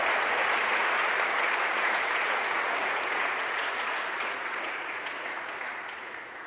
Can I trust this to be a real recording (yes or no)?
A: no